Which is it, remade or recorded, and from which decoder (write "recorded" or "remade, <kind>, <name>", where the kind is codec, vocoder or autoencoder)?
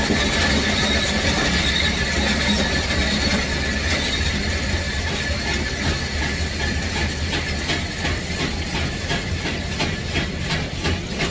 recorded